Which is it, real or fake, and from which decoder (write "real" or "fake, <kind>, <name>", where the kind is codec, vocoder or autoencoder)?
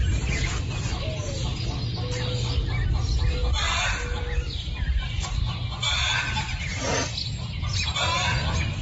real